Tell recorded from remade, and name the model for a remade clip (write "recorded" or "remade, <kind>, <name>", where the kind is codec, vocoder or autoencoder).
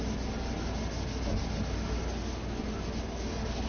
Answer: recorded